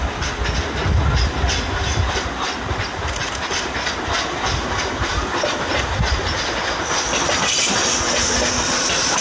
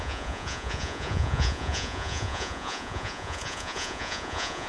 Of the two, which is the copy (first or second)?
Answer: second